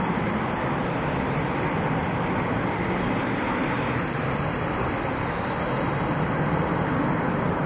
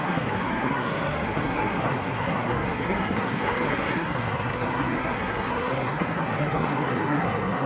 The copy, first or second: second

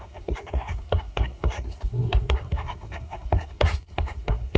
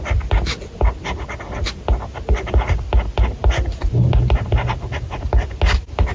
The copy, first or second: first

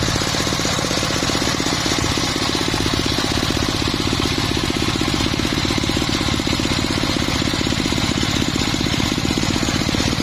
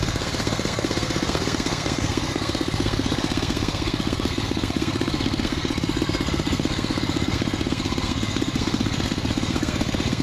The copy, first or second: second